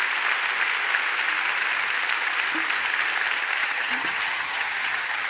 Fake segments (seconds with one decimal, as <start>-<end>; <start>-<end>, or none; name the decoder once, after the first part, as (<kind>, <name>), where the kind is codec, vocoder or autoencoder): 3.6-5.3 (vocoder, HiFi-GAN)